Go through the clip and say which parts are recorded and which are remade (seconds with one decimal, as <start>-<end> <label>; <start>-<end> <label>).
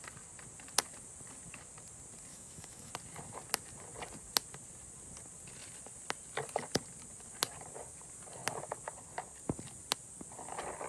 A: 0.0-2.3 recorded; 2.3-2.9 remade; 2.9-10.9 recorded